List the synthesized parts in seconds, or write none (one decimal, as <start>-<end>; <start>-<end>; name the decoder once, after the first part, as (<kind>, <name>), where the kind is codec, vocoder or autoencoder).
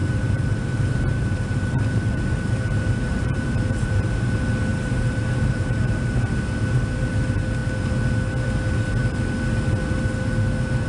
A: 0.0-4.3 (vocoder, BigVGAN v2); 4.7-6.3